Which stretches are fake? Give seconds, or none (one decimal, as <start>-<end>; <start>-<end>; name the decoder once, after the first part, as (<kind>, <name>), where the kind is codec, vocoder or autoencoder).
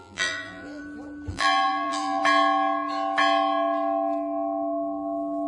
0.0-0.8 (vocoder, BigVGAN v2); 1.3-2.2